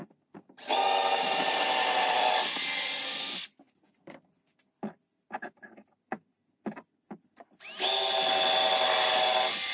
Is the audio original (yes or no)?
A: yes